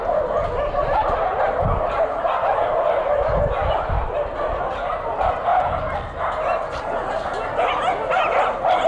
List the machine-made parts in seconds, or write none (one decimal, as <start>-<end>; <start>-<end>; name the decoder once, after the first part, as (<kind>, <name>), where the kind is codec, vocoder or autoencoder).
none